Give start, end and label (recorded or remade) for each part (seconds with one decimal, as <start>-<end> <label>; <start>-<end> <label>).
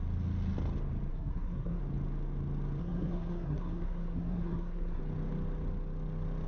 0.0-1.1 recorded; 1.1-1.8 remade; 1.8-2.8 recorded; 2.8-5.0 remade; 5.0-6.5 recorded